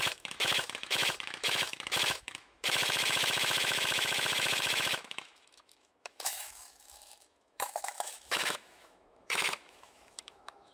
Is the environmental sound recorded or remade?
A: remade